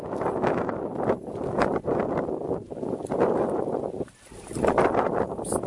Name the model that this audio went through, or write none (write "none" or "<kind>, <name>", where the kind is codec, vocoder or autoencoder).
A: none